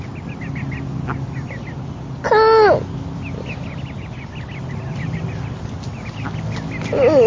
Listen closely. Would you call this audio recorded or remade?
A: recorded